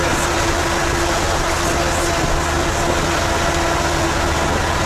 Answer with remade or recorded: recorded